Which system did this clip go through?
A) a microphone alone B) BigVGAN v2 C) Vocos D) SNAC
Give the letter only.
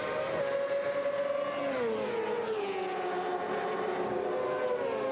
A